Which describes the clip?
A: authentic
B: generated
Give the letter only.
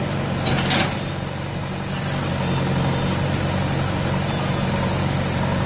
A